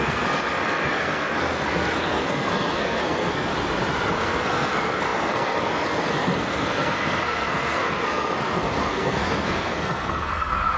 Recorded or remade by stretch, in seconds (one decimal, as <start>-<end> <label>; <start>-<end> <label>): 0.0-3.5 remade; 3.5-4.1 recorded; 4.1-10.8 remade